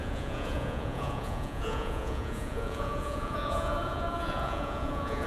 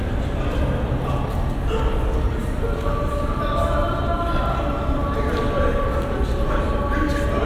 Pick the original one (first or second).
second